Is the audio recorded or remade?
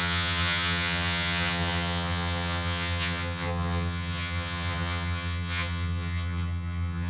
remade